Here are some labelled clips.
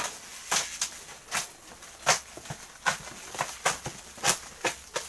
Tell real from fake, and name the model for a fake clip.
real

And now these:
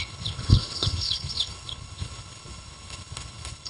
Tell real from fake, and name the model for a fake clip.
fake, codec, HILCodec